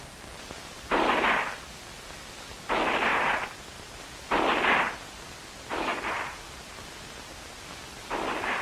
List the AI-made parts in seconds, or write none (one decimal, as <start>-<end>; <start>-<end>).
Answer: none